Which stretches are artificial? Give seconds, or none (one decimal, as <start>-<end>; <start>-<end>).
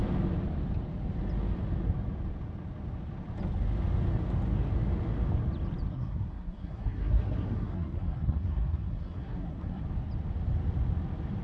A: 5.9-9.8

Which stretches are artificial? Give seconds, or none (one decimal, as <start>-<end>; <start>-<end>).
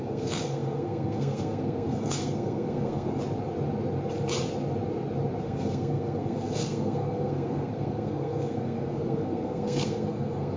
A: 0.0-3.2; 5.4-10.6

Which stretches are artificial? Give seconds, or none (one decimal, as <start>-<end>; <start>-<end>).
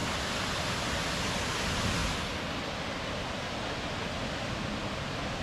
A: none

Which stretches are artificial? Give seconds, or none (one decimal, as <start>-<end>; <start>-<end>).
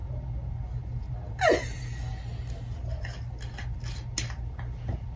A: none